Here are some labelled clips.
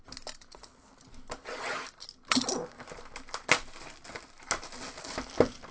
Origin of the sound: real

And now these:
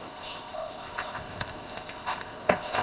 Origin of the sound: fake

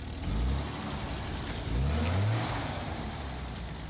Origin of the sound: real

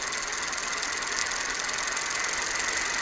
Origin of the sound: real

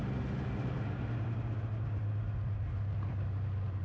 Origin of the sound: real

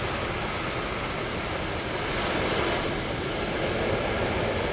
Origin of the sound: real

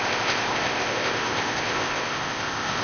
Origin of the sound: fake